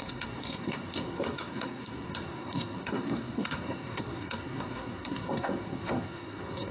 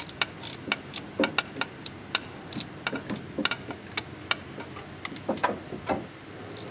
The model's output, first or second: first